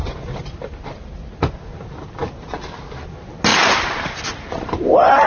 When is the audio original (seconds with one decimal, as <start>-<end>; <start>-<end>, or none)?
0.0-3.5